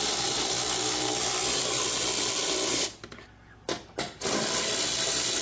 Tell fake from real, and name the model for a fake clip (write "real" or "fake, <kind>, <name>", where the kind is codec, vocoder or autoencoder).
real